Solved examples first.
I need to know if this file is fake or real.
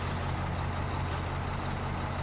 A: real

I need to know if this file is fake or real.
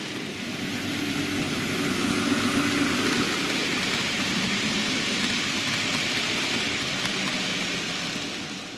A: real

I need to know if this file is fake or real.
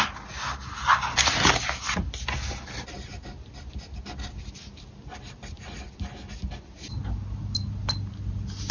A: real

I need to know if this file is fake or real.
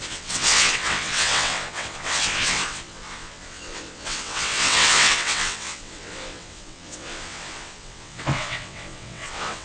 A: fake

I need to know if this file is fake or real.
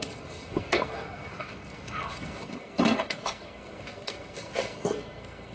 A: fake